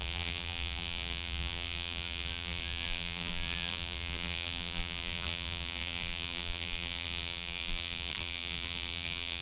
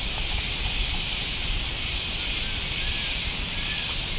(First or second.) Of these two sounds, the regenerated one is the first